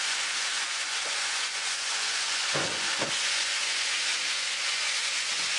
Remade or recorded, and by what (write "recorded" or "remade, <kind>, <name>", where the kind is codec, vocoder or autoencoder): remade, vocoder, Vocos